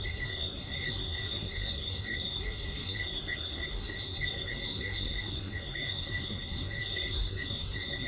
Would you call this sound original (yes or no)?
no